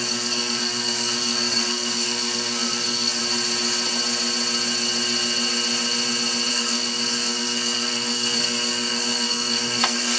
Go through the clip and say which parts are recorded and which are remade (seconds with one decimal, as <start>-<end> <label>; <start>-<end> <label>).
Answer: 0.0-3.2 remade; 3.2-6.5 recorded; 6.5-10.2 remade